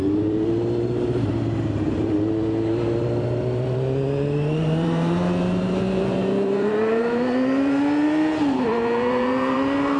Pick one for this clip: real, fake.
fake